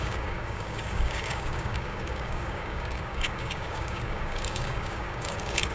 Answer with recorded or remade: remade